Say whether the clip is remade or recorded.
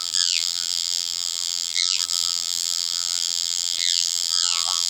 remade